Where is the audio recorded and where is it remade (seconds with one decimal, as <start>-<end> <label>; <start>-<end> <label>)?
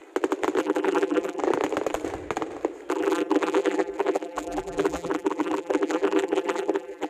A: 0.0-0.6 recorded; 0.6-1.4 remade; 1.4-2.9 recorded; 2.9-7.1 remade